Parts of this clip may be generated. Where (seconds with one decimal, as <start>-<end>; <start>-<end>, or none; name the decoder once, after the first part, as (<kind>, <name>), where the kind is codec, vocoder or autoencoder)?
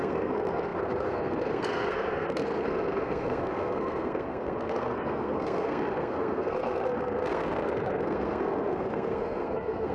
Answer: 0.0-9.9 (codec, SNAC)